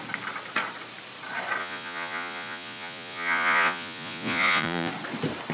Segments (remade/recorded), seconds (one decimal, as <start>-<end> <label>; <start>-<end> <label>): 0.0-1.6 recorded; 1.6-4.9 remade; 4.9-5.5 recorded